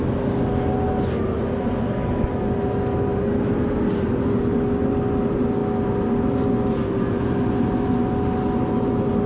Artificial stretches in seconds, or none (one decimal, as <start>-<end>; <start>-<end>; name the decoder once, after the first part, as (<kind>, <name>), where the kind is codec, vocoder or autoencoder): none